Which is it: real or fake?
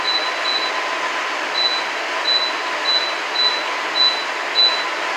real